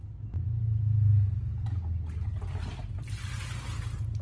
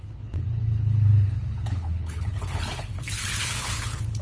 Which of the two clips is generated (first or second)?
second